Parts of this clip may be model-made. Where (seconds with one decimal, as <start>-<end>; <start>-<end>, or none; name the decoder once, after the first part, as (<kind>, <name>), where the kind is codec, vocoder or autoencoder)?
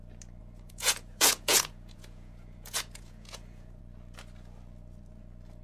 0.4-3.8 (vocoder, Vocos)